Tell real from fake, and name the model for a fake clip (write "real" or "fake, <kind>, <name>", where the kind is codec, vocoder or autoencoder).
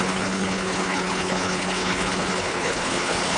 fake, codec, HILCodec